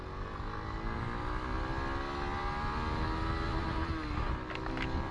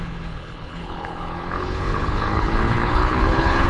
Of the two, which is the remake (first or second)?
second